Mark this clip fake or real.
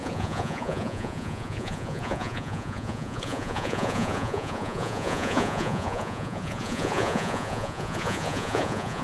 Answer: fake